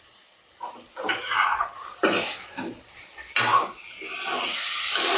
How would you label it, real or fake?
real